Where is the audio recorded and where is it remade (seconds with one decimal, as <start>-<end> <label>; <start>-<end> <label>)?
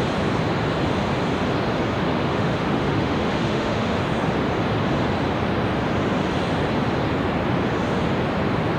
0.0-2.1 recorded; 2.1-4.0 remade; 4.0-8.8 recorded